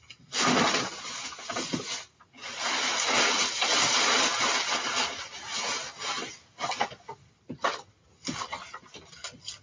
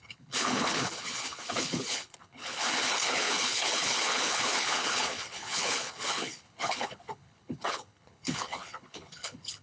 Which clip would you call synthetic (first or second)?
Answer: second